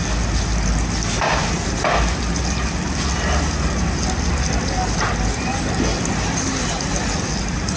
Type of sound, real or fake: real